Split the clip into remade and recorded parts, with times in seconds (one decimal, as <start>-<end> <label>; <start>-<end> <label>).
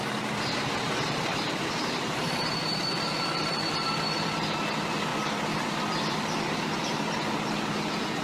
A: 0.0-1.3 recorded; 1.3-2.4 remade; 2.4-8.2 recorded